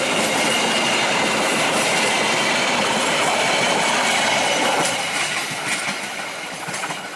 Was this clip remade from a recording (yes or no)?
no